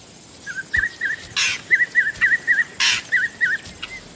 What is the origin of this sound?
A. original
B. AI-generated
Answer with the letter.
A